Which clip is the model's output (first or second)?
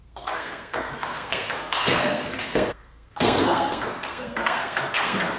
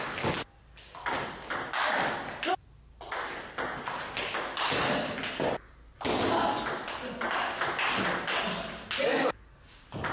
first